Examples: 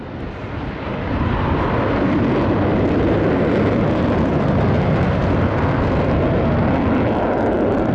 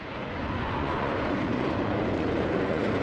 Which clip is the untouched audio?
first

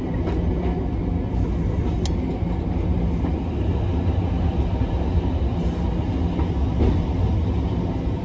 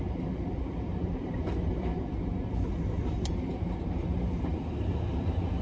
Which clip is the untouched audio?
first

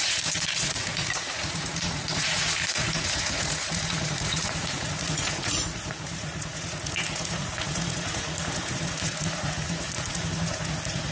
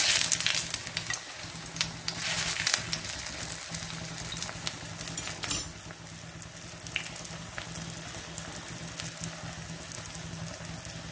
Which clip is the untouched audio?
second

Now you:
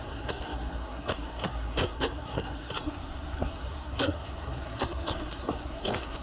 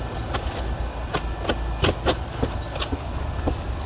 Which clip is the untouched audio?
second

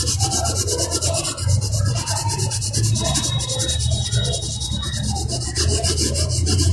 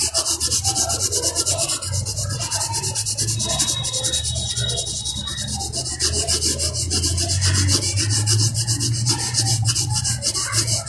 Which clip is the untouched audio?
second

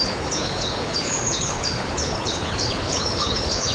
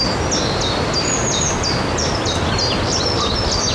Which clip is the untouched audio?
second